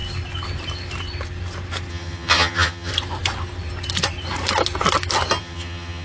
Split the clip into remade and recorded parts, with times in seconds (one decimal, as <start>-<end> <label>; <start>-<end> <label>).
0.0-1.9 recorded; 1.9-2.9 remade; 2.9-5.4 recorded; 5.4-6.0 remade